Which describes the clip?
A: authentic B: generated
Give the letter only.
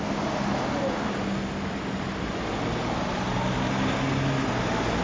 A